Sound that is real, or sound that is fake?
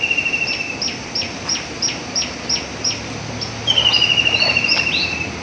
real